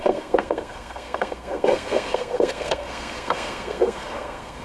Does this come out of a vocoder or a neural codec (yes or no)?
yes